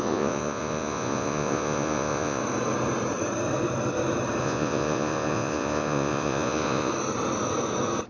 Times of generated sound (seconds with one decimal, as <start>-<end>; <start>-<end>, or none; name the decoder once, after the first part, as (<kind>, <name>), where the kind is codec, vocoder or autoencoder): 0.0-2.4 (vocoder, Vocos); 4.4-6.9